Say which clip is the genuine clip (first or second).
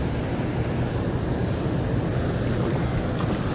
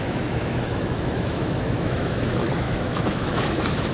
first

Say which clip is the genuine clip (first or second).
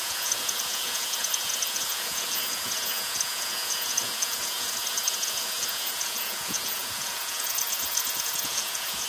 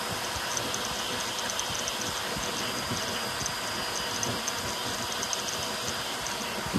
second